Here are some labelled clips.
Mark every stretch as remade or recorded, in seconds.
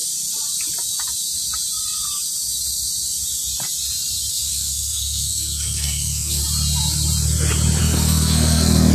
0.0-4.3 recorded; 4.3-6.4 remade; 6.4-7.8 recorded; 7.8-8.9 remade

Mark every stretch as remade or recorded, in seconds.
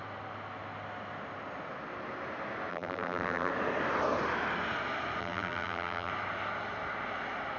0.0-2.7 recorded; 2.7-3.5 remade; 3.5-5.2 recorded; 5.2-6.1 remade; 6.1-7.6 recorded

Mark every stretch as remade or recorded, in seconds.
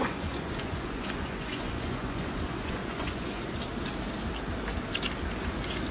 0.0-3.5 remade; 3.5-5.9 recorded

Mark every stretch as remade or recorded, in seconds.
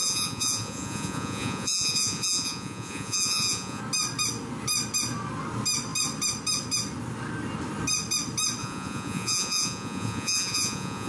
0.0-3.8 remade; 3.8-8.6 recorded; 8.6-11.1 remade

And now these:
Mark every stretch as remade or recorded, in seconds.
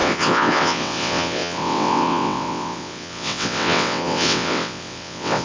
0.0-5.4 remade